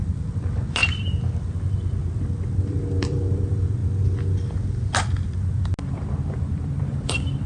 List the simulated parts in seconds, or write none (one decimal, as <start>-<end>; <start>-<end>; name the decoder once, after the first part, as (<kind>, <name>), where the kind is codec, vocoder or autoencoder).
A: 0.0-0.8 (vocoder, BigVGAN v2); 2.6-3.8; 5.9-7.5